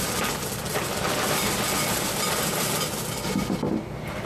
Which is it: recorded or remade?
recorded